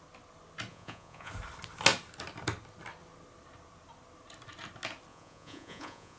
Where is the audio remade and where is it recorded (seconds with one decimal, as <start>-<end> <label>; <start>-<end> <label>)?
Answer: 0.0-0.7 recorded; 0.7-1.3 remade; 1.3-5.1 recorded; 5.1-6.2 remade